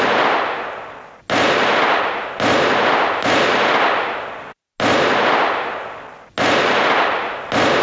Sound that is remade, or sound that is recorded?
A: recorded